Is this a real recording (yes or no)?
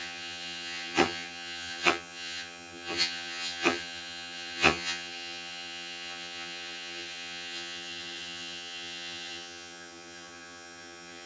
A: no